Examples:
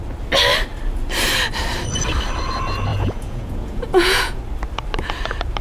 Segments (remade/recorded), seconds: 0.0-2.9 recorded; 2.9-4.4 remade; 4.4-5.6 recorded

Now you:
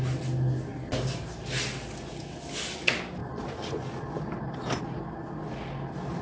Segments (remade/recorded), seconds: 0.0-6.2 recorded

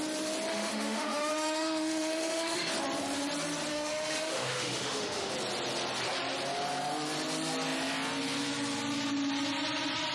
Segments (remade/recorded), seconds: 0.0-0.5 recorded; 0.5-2.7 remade; 2.7-3.7 recorded; 3.7-5.3 remade; 5.3-10.1 recorded

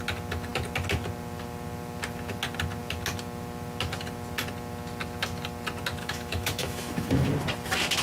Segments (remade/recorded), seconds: 0.0-6.0 recorded; 6.0-7.3 remade; 7.3-8.0 recorded